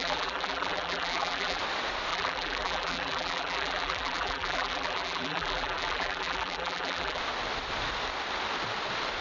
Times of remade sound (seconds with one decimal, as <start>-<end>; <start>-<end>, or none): 0.0-1.6; 2.1-7.2